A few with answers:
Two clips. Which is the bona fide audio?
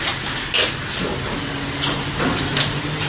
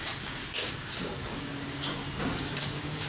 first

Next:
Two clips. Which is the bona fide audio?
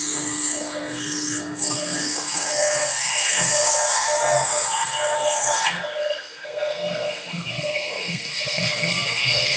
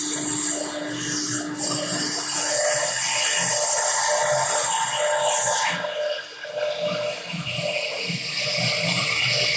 second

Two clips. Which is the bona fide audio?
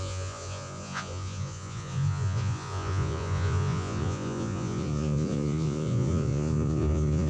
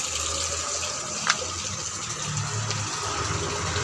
second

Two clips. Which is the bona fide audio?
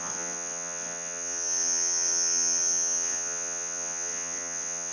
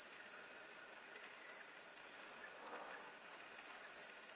second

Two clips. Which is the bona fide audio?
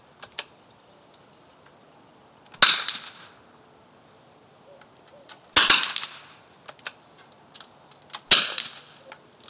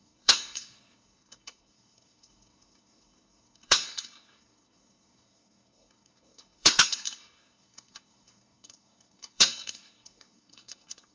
first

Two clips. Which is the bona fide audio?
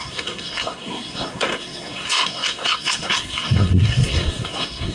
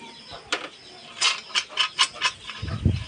second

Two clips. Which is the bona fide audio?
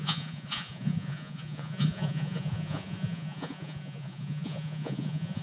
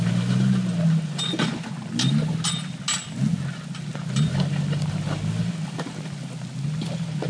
second